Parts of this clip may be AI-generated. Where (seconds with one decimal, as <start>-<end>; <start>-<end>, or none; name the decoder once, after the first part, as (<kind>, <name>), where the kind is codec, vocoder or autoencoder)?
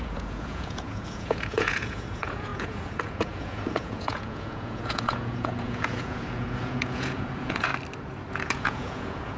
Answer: 0.0-7.7 (vocoder, Vocos); 8.3-9.4